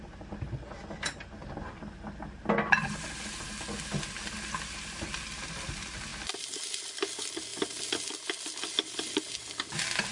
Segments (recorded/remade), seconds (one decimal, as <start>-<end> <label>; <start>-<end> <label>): 0.0-10.1 recorded